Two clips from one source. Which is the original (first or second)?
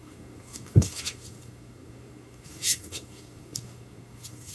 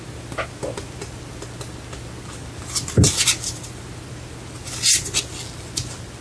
second